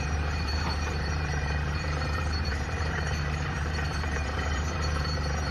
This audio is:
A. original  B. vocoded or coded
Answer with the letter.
B